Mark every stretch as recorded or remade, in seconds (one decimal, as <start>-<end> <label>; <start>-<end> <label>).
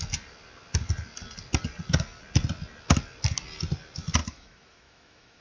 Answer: 0.0-4.2 recorded; 4.2-5.4 remade